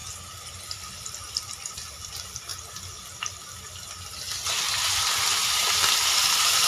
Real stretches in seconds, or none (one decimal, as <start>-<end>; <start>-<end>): 0.0-0.5; 2.5-6.7